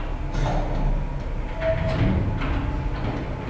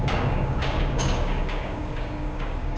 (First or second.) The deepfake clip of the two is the second